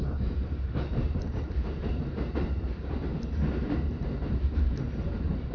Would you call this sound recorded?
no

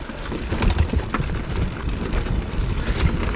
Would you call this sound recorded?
yes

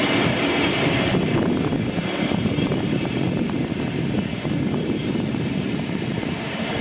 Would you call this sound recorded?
no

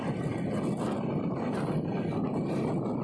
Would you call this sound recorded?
yes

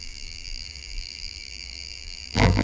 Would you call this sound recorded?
no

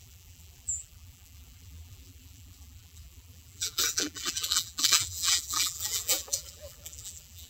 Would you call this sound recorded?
no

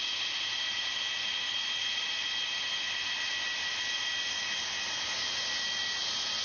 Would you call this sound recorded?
yes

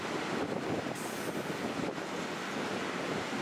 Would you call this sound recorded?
yes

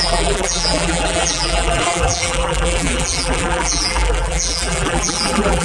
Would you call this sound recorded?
no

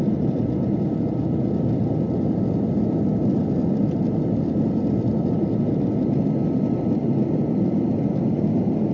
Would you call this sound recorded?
yes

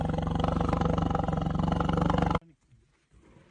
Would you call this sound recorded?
yes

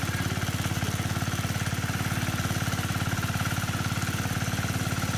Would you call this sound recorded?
yes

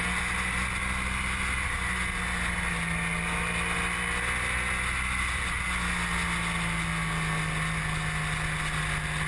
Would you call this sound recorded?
yes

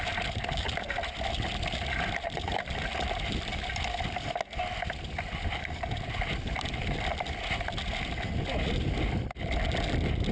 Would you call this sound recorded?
yes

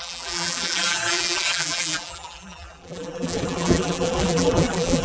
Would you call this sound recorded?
no